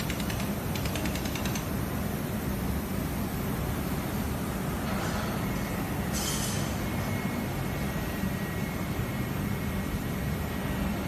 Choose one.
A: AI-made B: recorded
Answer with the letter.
A